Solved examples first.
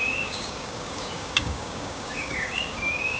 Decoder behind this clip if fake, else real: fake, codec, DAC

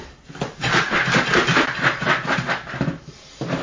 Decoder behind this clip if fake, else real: real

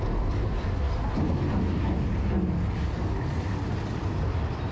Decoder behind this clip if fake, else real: real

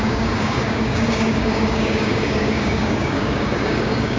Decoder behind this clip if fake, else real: fake, codec, DAC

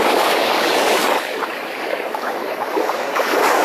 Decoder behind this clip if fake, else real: fake, codec, DAC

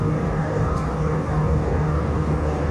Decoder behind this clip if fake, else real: fake, codec, DAC